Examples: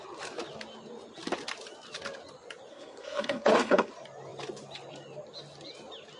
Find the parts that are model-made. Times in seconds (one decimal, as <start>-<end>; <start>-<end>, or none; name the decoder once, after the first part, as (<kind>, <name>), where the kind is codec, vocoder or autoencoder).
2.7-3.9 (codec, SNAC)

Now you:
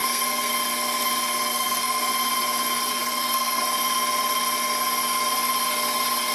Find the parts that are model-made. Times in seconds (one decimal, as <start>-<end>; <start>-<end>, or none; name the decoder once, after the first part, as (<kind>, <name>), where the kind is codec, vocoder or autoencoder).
0.0-0.5 (codec, SNAC); 1.5-2.0; 2.9-3.6

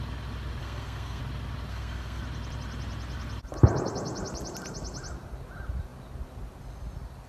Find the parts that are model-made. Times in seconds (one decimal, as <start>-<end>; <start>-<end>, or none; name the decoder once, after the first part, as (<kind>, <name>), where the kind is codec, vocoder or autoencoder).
0.6-1.2 (codec, SNAC); 1.7-2.2